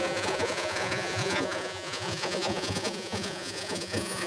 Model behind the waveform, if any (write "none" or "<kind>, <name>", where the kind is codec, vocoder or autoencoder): vocoder, Vocos